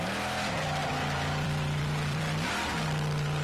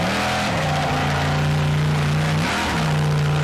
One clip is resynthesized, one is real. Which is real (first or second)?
second